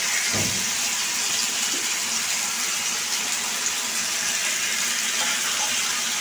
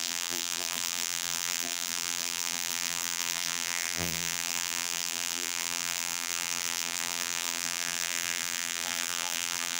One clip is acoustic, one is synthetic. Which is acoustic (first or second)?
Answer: first